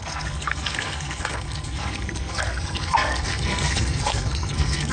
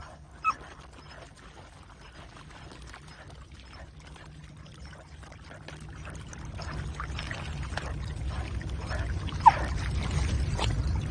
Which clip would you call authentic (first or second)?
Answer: second